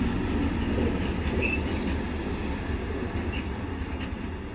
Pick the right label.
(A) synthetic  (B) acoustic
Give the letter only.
B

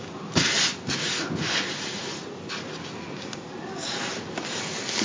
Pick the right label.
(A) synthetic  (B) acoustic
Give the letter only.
B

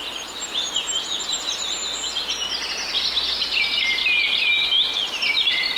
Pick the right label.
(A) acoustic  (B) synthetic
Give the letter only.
A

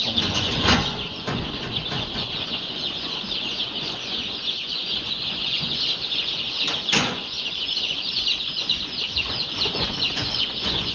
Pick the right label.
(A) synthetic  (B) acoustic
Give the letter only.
A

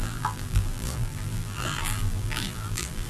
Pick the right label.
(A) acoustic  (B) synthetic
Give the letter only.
B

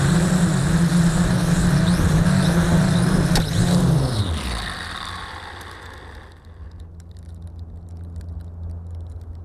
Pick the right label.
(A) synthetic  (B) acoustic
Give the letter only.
B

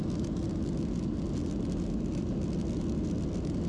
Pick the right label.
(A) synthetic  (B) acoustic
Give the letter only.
B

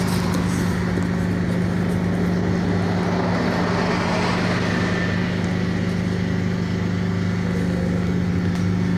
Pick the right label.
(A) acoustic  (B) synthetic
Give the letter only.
A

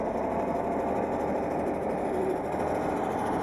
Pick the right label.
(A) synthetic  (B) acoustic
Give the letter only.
B